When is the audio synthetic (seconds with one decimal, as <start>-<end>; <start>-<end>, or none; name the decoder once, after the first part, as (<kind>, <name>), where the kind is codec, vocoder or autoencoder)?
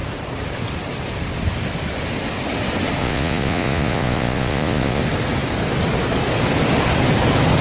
3.0-5.0 (vocoder, Vocos)